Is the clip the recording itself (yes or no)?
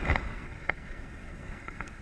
no